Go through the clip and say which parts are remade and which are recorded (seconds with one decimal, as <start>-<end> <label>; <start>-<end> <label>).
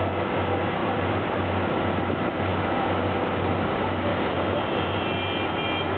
0.0-0.8 recorded; 0.8-1.4 remade; 1.4-4.1 recorded; 4.1-5.0 remade; 5.0-6.0 recorded